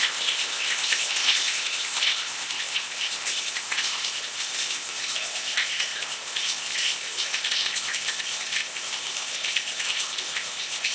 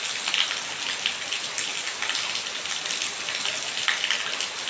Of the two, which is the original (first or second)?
second